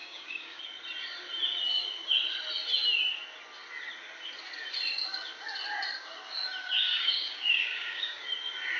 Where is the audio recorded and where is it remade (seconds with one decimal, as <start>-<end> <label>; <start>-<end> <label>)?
0.0-0.6 remade; 0.6-6.6 recorded; 6.6-8.2 remade; 8.2-8.8 recorded